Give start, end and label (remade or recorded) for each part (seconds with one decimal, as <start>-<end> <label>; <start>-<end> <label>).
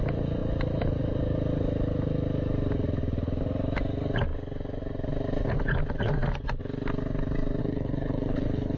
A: 0.0-7.6 recorded; 7.6-8.8 remade